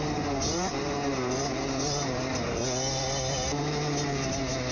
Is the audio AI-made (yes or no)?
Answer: no